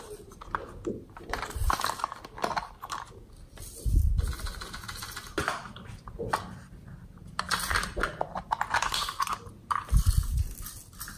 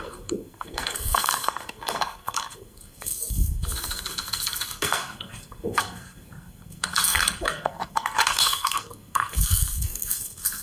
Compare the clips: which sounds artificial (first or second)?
second